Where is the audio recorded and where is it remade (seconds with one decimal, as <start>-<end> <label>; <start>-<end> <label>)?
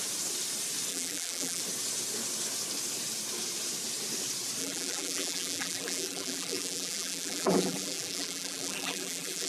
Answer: 0.0-0.9 recorded; 0.9-1.6 remade; 1.6-4.6 recorded; 4.6-9.5 remade